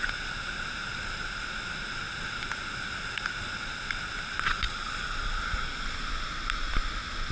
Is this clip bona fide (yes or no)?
yes